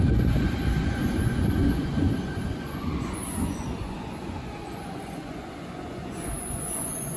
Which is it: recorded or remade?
remade